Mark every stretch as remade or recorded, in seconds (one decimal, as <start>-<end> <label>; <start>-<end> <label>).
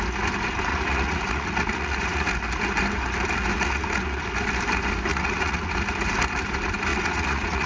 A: 0.0-0.7 recorded; 0.7-2.3 remade; 2.3-3.5 recorded; 3.5-4.2 remade; 4.2-5.1 recorded; 5.1-5.7 remade; 5.7-6.9 recorded; 6.9-7.7 remade